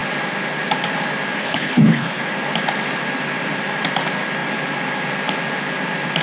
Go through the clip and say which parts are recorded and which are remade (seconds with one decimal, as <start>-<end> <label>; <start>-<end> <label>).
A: 0.0-1.4 recorded; 1.4-2.2 remade; 2.2-6.2 recorded